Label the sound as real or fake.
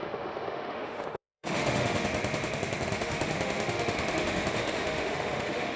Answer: fake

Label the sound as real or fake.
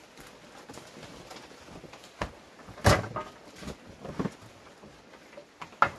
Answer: real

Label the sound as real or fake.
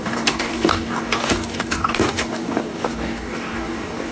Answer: fake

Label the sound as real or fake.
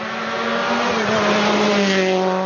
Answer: real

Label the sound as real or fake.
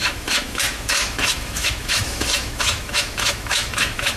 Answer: fake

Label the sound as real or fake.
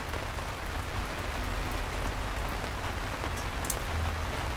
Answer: real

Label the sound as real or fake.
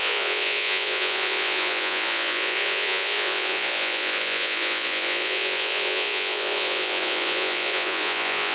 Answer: fake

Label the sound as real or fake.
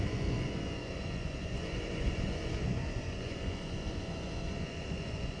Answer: fake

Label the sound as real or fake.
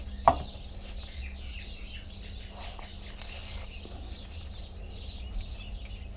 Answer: real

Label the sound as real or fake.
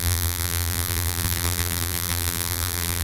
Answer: fake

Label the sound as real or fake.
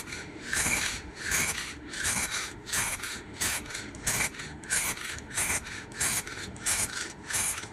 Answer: fake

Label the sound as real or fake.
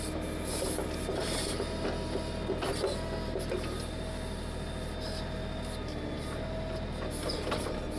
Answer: real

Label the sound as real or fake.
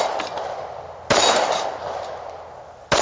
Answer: real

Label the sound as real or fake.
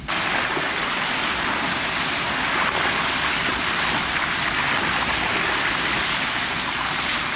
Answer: real